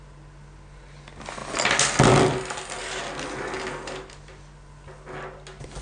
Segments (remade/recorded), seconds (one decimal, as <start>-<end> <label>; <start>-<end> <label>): 0.0-5.8 recorded